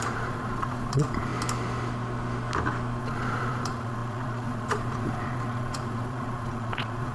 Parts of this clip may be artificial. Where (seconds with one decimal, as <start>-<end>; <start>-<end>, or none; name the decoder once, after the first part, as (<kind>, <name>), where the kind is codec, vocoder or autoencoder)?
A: 0.0-1.3 (vocoder, Vocos); 3.0-7.1